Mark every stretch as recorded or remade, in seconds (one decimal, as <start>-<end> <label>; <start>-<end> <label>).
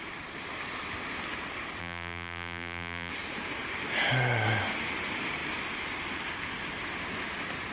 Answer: 0.0-1.8 recorded; 1.8-3.1 remade; 3.1-7.7 recorded